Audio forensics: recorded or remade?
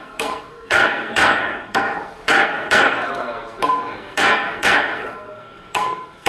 remade